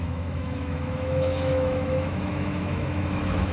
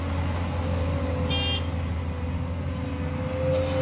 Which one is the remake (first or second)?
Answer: first